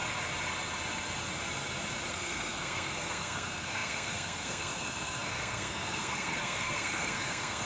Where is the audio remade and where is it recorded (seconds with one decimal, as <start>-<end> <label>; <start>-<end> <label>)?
0.0-2.1 recorded; 2.1-7.6 remade